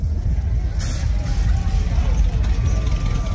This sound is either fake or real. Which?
real